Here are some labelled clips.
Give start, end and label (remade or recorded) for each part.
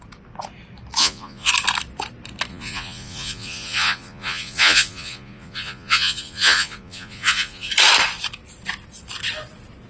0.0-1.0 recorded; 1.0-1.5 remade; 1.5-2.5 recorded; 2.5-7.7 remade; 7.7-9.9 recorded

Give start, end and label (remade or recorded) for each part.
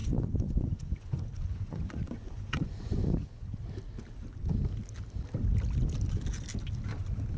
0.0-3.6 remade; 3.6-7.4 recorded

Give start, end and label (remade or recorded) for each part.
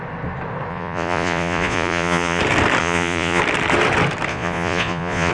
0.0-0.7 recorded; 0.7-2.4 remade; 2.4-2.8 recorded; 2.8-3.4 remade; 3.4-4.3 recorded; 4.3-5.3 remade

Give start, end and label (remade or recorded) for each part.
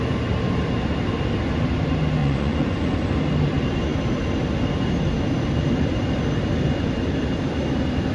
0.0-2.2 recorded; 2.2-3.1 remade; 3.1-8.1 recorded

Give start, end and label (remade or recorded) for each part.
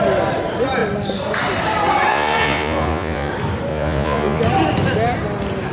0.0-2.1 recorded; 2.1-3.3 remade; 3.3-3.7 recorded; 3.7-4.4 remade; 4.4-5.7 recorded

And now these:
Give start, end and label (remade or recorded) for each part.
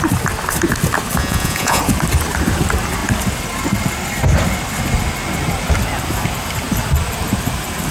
0.0-1.2 recorded; 1.2-1.8 remade; 1.8-7.9 recorded